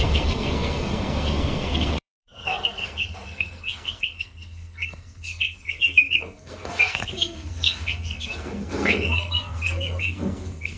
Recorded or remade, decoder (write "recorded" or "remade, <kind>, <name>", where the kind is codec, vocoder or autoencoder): remade, codec, SNAC